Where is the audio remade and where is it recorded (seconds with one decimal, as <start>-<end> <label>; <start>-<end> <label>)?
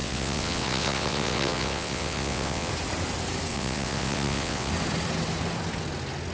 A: 0.0-2.7 remade; 2.7-3.5 recorded; 3.5-4.7 remade; 4.7-6.3 recorded